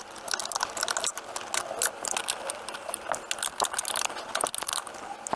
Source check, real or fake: real